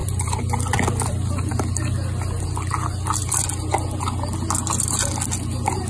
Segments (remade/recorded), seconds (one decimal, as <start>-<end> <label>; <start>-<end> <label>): 0.0-1.5 remade; 1.5-5.9 recorded

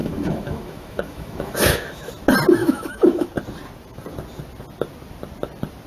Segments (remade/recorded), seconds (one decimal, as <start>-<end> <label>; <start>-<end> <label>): 0.0-2.1 remade; 2.1-2.6 recorded; 2.6-3.3 remade; 3.3-5.9 recorded

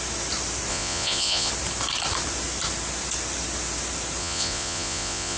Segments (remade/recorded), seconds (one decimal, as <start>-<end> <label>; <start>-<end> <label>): 0.0-0.7 recorded; 0.7-1.5 remade; 1.5-4.2 recorded; 4.2-5.4 remade

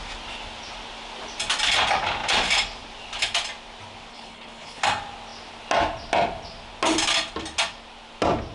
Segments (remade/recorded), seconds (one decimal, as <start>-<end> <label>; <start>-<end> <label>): 0.0-4.1 recorded; 4.1-4.8 remade; 4.8-8.5 recorded

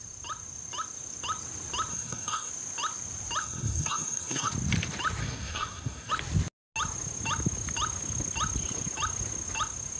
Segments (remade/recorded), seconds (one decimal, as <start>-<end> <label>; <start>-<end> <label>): 0.0-1.9 recorded; 1.9-2.5 remade; 2.5-3.4 recorded; 3.4-4.5 remade; 4.5-5.2 recorded; 5.2-6.1 remade; 6.1-10.0 recorded

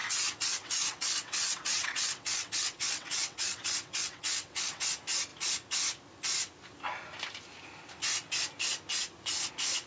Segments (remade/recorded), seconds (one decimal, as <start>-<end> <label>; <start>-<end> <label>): 0.0-4.8 remade; 4.8-9.9 recorded

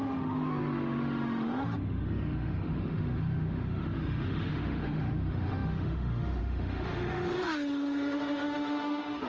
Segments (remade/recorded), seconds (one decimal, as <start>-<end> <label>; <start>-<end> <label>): 0.0-9.3 remade

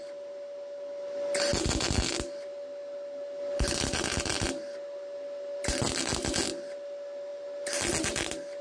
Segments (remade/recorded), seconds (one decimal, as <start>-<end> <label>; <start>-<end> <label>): 0.0-8.6 recorded